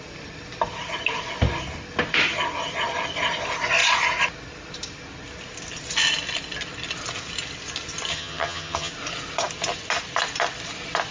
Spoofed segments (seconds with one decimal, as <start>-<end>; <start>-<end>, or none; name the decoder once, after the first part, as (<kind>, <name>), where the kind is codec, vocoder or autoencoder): 8.1-8.9 (vocoder, HiFi-GAN)